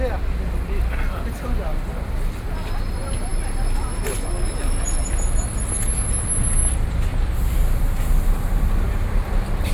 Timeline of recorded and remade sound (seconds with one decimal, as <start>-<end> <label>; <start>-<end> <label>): 0.0-9.7 recorded